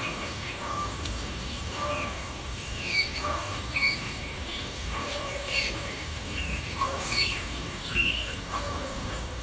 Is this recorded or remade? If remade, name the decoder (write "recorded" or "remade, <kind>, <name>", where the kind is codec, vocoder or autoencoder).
remade, codec, DAC